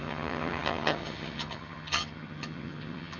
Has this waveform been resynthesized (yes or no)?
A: yes